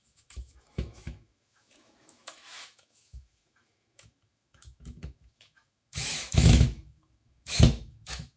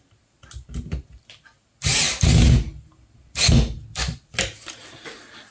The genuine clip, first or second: second